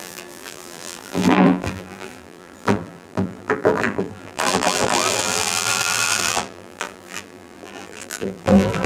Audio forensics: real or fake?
fake